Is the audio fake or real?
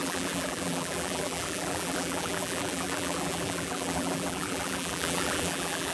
fake